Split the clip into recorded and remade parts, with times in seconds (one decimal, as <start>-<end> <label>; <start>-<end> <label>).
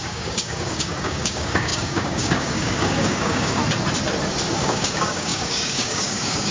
0.0-3.6 remade; 3.6-4.6 recorded; 4.6-6.5 remade